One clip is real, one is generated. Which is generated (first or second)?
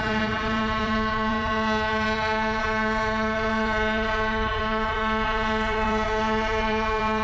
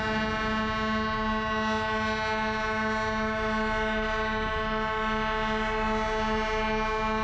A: first